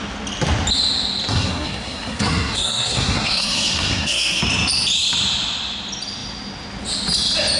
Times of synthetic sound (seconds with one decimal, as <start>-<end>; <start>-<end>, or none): 1.3-4.4